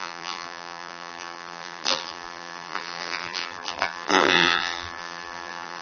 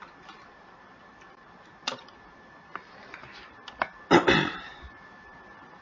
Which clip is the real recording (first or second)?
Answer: second